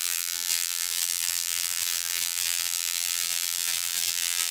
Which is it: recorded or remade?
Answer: remade